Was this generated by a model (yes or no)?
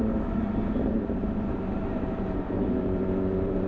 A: yes